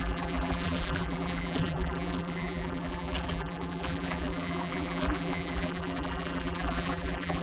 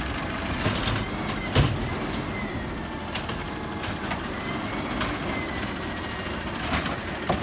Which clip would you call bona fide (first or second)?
second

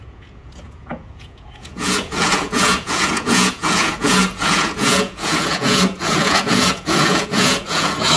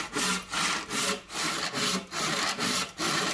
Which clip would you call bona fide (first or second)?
second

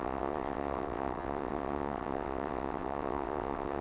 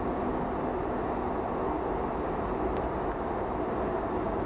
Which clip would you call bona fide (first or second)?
second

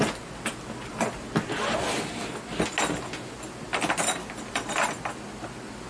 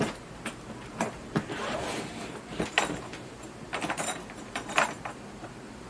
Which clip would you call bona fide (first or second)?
first